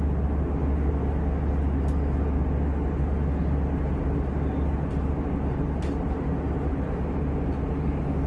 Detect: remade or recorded recorded